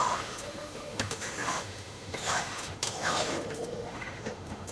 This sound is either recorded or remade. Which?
remade